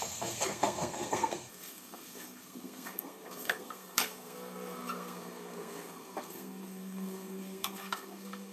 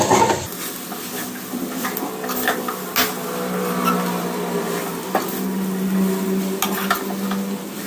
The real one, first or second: second